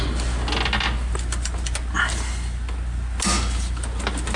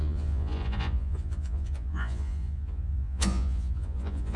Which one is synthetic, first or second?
second